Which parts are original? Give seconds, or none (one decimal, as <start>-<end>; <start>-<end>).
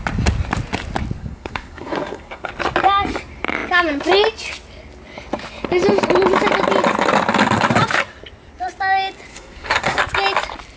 0.0-1.2; 2.5-9.3; 10.0-10.8